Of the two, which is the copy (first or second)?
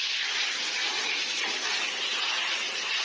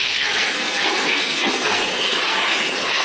second